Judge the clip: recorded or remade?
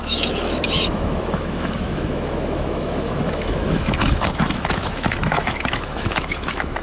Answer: remade